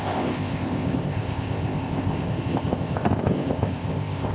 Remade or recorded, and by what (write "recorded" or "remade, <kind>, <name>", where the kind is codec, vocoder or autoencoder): remade, codec, ZipCodec